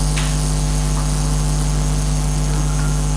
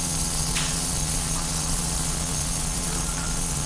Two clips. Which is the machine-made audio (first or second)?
second